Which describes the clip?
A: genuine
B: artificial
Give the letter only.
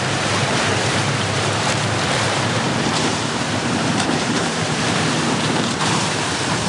B